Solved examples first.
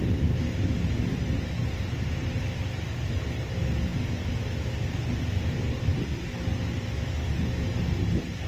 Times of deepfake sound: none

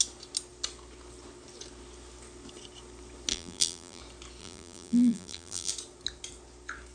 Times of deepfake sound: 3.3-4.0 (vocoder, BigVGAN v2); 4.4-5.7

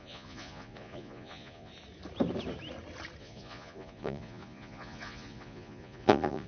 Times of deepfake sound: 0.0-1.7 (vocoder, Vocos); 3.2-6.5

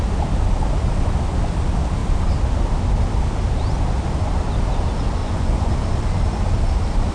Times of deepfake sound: 5.2-5.7 (vocoder, Vocos)